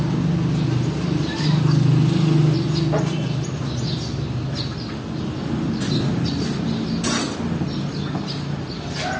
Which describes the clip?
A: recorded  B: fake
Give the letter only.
A